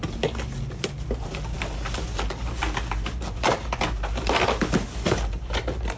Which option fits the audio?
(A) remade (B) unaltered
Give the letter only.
B